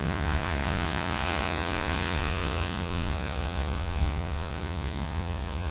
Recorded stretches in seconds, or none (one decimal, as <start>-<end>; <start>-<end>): none